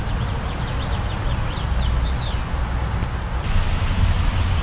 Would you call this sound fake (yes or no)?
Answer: no